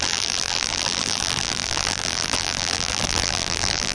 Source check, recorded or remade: remade